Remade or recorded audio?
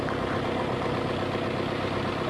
recorded